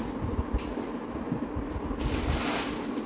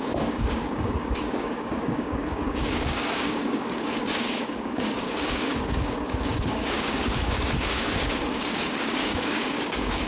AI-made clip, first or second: second